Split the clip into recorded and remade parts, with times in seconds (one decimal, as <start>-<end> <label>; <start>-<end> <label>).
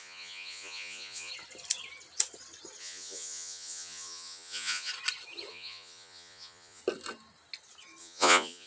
0.0-1.3 remade; 1.3-2.8 recorded; 2.8-4.9 remade; 4.9-5.5 recorded; 5.5-6.8 remade; 6.8-8.0 recorded; 8.0-8.7 remade